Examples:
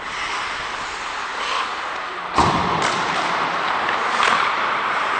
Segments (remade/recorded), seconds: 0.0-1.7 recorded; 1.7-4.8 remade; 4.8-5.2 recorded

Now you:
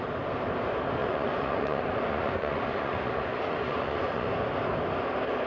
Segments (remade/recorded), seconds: 0.0-1.0 recorded; 1.0-4.3 remade; 4.3-5.5 recorded